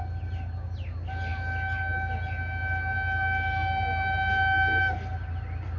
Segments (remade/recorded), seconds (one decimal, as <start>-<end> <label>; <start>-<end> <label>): 0.0-5.8 recorded